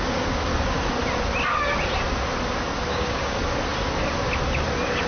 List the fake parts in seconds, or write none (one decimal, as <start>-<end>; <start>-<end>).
0.0-0.5; 2.9-3.4